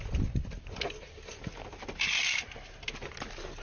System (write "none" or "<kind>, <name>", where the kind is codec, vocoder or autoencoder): none